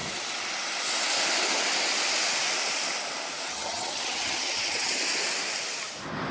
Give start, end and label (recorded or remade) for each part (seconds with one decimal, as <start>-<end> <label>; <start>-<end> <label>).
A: 0.0-3.5 recorded; 3.5-4.9 remade; 4.9-6.3 recorded